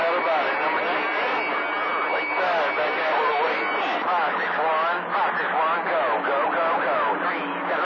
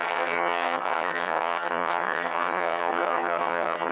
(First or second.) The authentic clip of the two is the first